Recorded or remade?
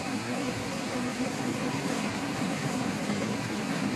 remade